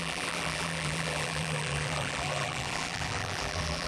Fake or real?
fake